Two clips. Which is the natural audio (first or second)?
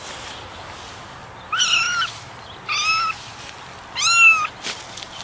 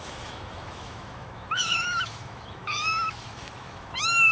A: first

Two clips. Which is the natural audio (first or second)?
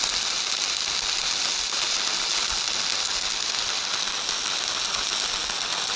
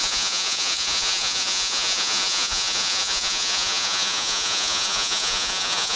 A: first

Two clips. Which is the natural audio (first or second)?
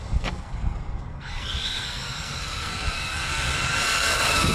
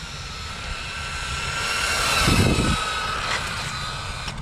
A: second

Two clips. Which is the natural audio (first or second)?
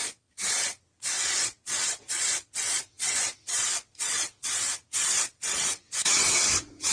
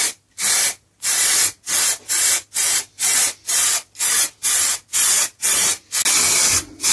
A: second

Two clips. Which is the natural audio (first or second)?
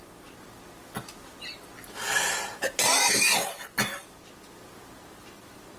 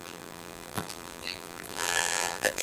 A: first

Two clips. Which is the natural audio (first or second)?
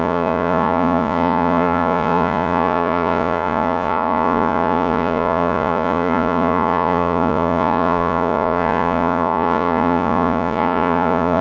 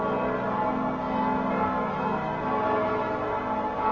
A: second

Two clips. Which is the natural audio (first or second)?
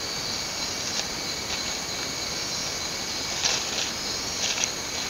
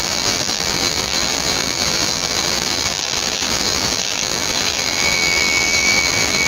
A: first